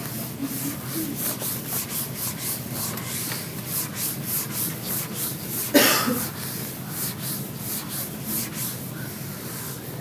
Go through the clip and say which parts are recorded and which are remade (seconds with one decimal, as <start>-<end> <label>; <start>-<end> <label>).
0.0-0.4 recorded; 0.4-5.0 remade; 5.0-10.0 recorded